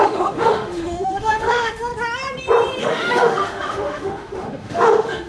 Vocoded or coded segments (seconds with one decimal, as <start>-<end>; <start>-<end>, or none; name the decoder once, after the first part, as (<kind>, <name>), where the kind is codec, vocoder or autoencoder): 0.0-1.9 (autoencoder, DAC-VAE); 2.8-5.3